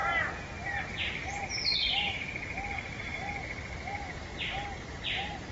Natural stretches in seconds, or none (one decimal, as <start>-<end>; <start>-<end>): 0.0-0.8; 1.4-2.7; 4.3-4.9